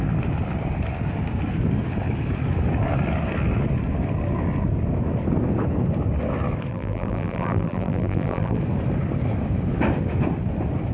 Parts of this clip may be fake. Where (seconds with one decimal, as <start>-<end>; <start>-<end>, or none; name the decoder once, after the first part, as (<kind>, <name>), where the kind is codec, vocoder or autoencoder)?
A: 6.7-8.6 (vocoder, BigVGAN v2)